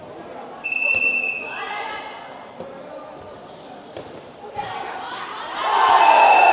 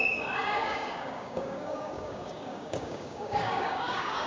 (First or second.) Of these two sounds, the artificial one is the second